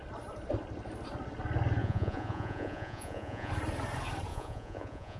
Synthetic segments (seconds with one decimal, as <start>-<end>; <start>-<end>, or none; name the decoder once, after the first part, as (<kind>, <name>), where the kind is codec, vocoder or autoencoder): 1.8-3.5 (vocoder, Vocos); 4.3-5.2